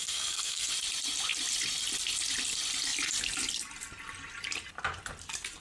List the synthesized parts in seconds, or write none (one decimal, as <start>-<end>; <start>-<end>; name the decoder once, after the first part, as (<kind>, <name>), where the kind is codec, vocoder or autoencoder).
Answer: 0.0-0.7 (codec, SNAC)